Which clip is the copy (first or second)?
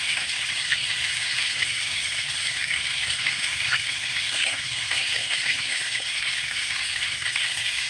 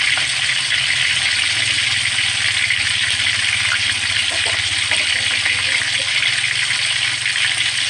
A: first